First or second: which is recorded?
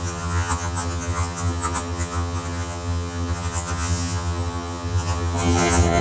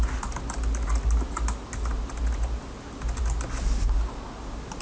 second